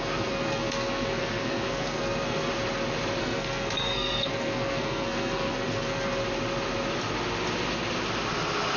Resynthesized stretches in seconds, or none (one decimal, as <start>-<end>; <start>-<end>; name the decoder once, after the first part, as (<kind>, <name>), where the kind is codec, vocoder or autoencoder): 0.0-2.5 (codec, SNAC); 3.2-6.2